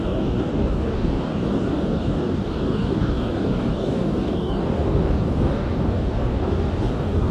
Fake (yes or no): yes